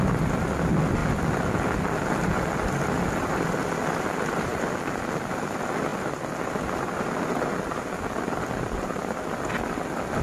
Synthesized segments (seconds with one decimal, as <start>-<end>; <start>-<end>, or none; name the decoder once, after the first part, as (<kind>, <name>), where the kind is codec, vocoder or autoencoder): none